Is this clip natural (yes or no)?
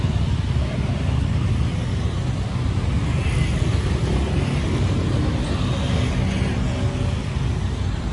yes